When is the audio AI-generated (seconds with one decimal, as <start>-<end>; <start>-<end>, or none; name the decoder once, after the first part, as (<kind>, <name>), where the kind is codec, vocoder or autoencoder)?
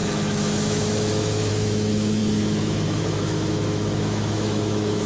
0.0-5.1 (autoencoder, DAC-VAE)